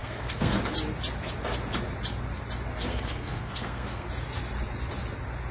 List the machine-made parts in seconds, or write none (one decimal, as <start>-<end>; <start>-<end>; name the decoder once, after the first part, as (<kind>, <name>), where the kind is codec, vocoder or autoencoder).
0.0-0.6 (codec, SNAC); 2.9-4.1